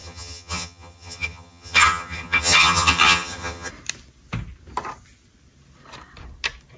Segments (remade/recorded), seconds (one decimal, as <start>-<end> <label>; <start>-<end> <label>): 0.0-3.7 remade; 3.7-6.8 recorded